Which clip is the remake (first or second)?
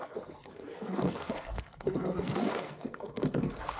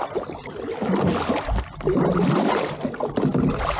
first